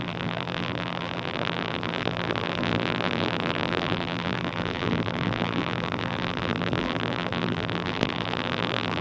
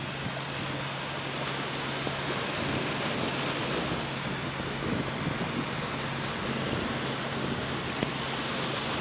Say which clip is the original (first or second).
second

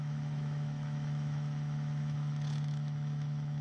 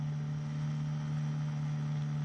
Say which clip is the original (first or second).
second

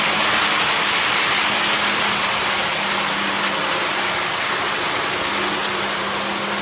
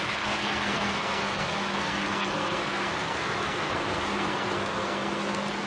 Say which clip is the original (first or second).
first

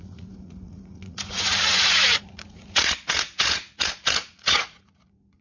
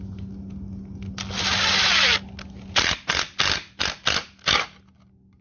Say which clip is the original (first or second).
second